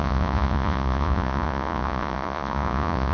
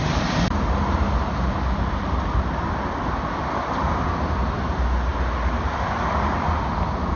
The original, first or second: second